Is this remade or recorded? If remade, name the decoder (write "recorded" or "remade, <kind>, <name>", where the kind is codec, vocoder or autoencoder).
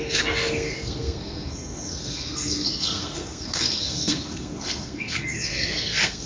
remade, codec, SNAC